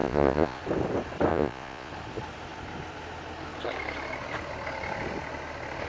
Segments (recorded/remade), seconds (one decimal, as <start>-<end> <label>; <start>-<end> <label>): 0.0-0.6 remade; 0.6-1.3 recorded; 1.3-1.9 remade; 1.9-5.9 recorded